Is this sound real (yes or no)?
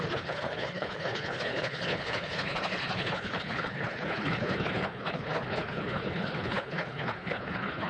no